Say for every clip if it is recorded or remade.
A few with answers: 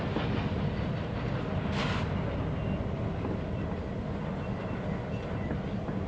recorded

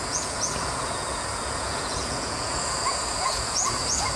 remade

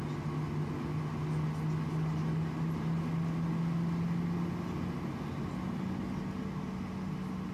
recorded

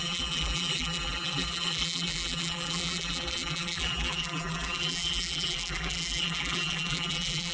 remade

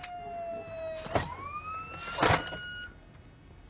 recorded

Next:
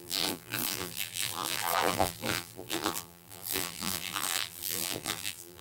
remade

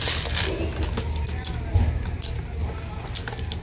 recorded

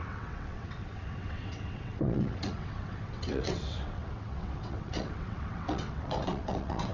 remade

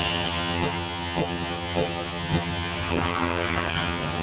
remade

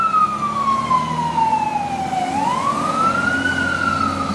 recorded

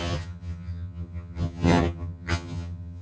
remade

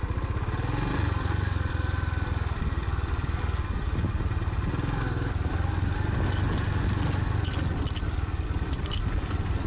recorded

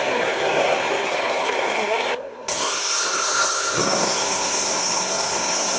remade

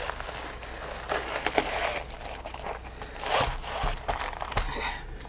recorded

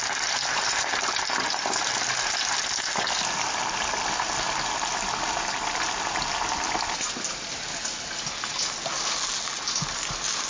recorded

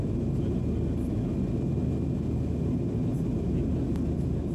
recorded